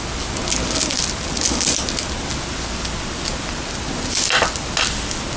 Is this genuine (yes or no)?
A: yes